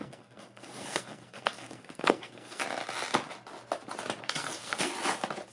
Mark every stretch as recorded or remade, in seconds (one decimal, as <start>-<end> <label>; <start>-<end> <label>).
0.0-2.6 remade; 2.6-4.2 recorded; 4.2-4.9 remade; 4.9-5.5 recorded